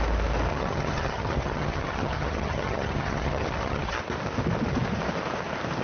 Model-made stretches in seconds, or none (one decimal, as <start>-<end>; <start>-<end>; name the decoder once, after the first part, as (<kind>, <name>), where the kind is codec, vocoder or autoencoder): 0.5-4.0 (vocoder, HiFi-GAN)